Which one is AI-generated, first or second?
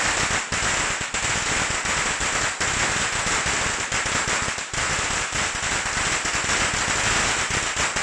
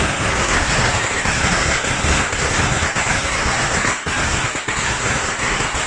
second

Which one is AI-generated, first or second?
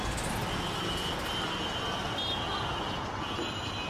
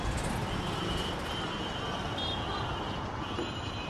second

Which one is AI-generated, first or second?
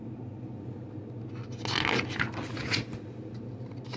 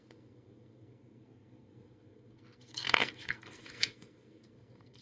second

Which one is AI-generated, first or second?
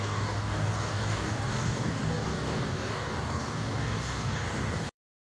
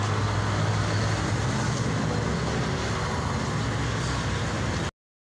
first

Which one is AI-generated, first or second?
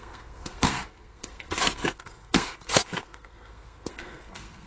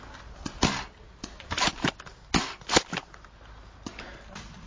first